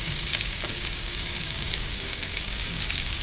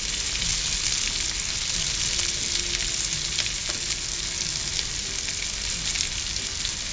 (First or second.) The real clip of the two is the second